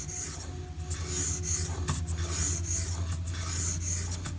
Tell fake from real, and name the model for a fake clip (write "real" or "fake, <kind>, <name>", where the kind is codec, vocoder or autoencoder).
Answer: real